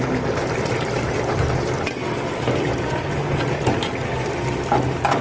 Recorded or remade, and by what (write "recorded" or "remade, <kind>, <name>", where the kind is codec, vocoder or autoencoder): recorded